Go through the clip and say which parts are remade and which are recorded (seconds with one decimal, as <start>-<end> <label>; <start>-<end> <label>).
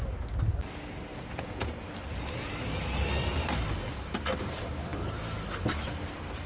0.0-1.1 recorded; 1.1-1.8 remade; 1.8-6.5 recorded